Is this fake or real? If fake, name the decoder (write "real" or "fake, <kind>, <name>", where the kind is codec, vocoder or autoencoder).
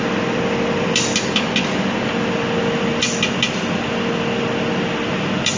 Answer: real